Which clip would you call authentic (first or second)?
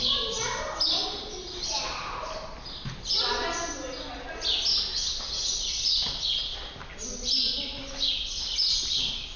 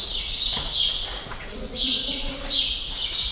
first